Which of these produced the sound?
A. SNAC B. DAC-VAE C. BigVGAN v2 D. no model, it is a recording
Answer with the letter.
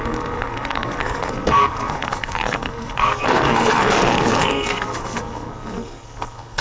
A